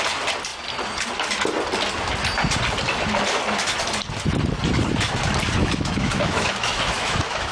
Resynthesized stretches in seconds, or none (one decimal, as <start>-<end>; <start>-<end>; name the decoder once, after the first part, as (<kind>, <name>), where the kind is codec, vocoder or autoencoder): 5.6-7.5 (autoencoder, DAC-VAE)